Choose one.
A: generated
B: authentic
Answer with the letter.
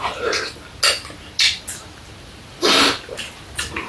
B